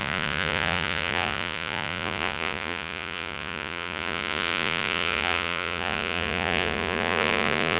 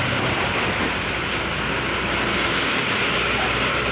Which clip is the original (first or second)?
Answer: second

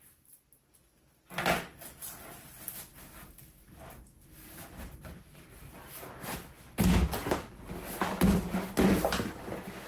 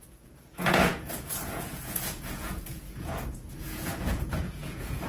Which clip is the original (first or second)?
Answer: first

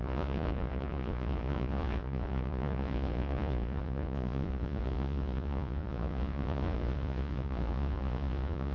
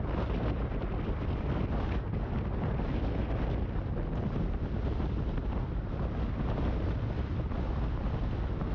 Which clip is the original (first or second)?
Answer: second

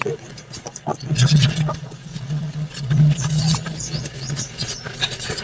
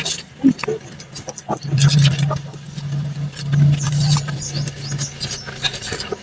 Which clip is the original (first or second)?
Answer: second